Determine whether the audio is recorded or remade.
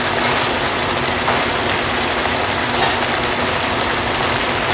recorded